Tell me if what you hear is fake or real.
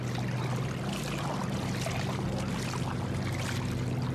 real